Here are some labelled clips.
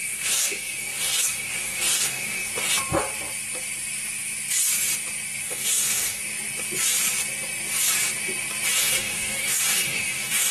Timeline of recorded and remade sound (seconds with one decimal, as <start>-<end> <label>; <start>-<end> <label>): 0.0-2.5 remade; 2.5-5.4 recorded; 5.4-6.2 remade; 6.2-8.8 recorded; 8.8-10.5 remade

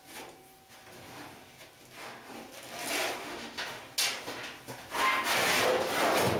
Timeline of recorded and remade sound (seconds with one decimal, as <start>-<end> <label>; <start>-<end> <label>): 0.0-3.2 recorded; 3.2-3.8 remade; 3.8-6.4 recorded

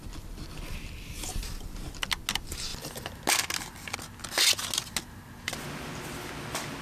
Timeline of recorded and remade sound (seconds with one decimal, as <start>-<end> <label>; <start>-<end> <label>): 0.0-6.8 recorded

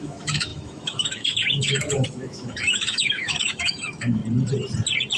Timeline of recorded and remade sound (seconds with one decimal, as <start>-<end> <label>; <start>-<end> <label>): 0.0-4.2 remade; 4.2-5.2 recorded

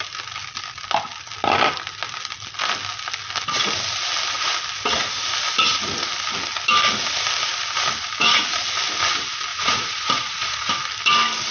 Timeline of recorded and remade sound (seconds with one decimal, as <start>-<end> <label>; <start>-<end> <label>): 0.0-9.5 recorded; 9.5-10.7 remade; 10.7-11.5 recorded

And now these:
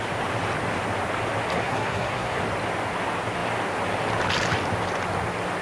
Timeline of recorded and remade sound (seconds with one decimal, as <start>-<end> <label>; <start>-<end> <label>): 0.0-1.5 recorded; 1.5-2.4 remade; 2.4-5.6 recorded

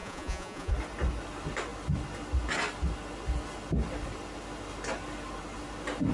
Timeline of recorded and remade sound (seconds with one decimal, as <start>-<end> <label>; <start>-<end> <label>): 0.0-0.7 remade; 0.7-6.1 recorded

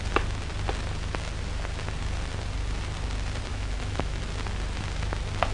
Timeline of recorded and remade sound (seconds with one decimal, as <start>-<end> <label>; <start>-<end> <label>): 0.0-3.5 recorded; 3.5-4.2 remade; 4.2-5.5 recorded